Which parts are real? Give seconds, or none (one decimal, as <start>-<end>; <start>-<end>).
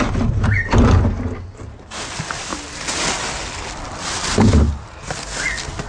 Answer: 0.0-5.9